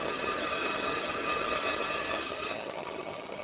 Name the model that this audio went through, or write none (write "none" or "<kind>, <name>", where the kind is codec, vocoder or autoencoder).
vocoder, HiFi-GAN